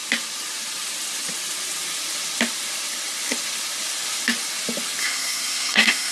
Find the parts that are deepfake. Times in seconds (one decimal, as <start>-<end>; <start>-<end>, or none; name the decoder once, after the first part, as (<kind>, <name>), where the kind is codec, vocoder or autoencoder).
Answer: 5.0-6.1 (codec, SNAC)